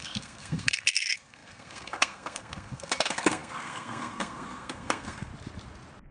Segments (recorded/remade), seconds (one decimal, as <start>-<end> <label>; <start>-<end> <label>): 0.0-5.3 remade; 5.3-6.1 recorded